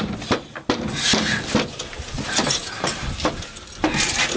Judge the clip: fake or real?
real